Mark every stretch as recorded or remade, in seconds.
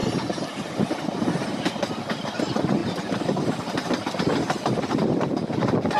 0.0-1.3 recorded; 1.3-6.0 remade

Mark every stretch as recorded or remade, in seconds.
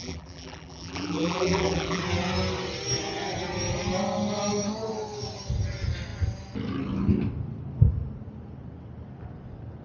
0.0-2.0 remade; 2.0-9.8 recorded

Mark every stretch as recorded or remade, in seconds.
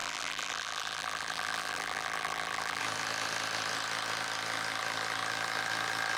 0.0-2.8 remade; 2.8-6.2 recorded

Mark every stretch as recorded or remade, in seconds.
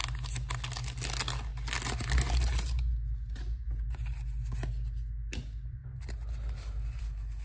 0.0-7.4 recorded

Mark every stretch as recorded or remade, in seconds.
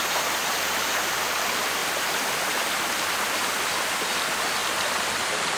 0.0-1.8 recorded; 1.8-3.6 remade; 3.6-4.6 recorded; 4.6-5.6 remade